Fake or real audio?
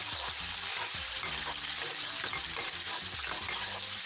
real